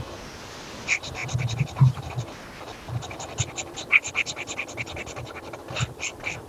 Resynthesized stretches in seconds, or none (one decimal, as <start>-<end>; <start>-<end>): 1.2-2.1